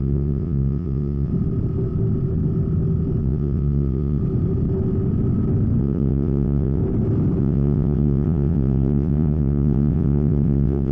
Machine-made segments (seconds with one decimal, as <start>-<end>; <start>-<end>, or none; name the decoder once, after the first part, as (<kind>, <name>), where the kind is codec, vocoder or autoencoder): 0.0-1.3 (vocoder, WaveNeXt); 3.2-4.2; 5.8-6.8; 7.4-10.9